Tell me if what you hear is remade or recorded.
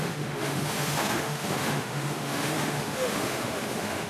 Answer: remade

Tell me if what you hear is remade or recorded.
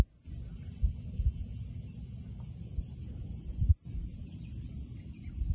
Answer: recorded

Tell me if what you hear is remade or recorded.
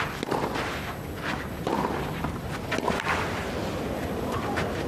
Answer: recorded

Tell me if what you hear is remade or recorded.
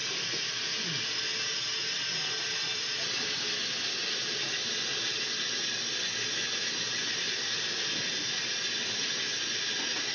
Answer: recorded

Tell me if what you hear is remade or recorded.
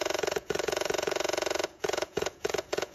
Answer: remade